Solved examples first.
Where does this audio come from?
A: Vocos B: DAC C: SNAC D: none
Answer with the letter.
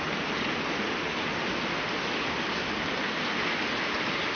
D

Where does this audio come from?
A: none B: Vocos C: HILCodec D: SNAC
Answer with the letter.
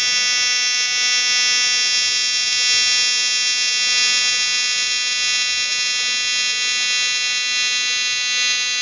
A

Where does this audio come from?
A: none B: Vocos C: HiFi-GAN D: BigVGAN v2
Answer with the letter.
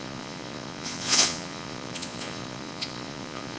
B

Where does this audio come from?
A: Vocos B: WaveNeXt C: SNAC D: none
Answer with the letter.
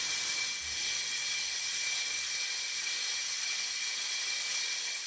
D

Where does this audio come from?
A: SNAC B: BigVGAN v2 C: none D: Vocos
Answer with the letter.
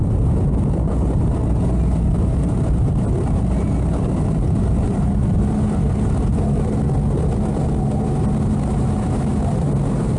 C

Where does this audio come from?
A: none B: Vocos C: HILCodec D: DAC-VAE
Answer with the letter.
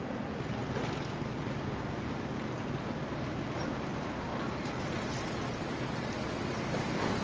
A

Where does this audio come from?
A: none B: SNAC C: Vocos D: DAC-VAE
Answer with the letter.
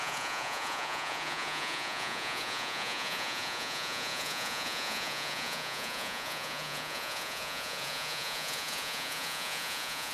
C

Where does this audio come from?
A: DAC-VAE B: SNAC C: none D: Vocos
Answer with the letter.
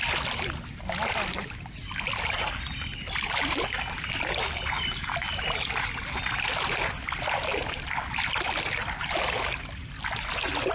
C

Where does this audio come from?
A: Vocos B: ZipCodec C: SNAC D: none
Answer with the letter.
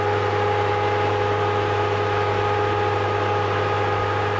D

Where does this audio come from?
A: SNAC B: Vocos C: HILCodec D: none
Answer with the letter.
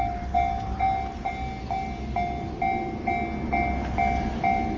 D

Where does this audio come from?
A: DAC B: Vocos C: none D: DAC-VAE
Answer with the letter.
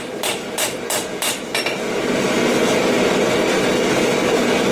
C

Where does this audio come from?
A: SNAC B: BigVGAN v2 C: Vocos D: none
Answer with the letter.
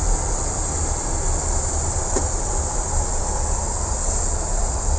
D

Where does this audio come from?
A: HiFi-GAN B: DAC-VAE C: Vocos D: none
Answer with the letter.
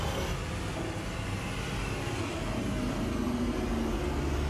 D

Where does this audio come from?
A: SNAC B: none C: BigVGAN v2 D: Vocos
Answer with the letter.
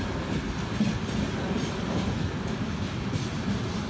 B